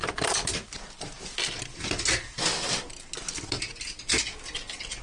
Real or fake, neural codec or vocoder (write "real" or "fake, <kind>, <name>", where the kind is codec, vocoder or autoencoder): real